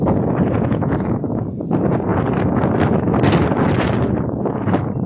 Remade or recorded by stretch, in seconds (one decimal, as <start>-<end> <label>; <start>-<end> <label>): 0.0-2.1 remade; 2.1-3.8 recorded; 3.8-5.1 remade